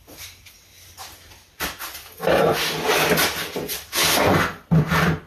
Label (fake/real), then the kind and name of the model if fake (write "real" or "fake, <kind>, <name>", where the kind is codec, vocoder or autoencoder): real